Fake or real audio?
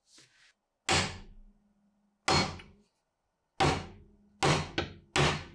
real